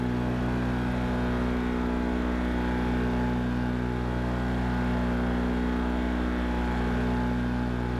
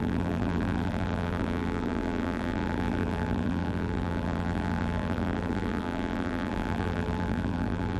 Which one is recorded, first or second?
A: first